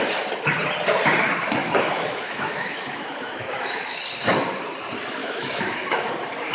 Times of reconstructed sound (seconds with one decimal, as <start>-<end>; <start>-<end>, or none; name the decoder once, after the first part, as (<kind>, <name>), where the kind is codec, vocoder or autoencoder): 1.6-4.0 (autoencoder, DAC-VAE); 5.2-6.1